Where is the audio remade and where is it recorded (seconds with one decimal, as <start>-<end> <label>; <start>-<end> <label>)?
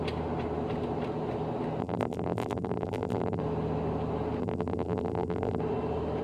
0.0-1.8 recorded; 1.8-3.4 remade; 3.4-4.4 recorded; 4.4-5.6 remade; 5.6-6.2 recorded